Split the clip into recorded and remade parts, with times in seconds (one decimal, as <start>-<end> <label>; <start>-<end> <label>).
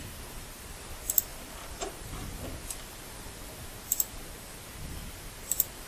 0.0-1.3 recorded; 1.3-3.6 remade; 3.6-5.9 recorded